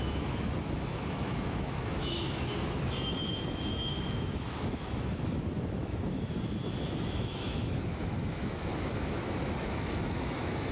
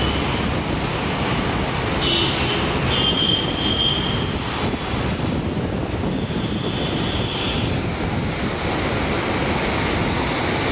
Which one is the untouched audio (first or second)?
second